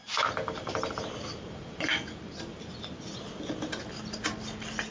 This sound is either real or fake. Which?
real